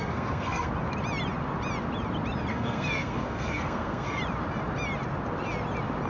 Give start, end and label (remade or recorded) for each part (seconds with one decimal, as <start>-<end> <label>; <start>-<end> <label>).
0.0-0.7 remade; 0.7-2.5 recorded; 2.5-4.2 remade; 4.2-6.1 recorded